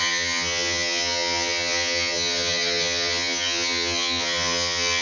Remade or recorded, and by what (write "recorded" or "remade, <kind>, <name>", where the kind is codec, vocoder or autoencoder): remade, vocoder, HiFi-GAN